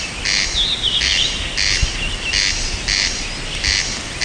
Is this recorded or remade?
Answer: recorded